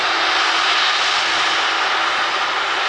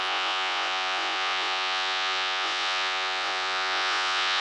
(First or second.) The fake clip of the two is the second